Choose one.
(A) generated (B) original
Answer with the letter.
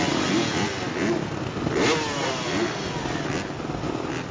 B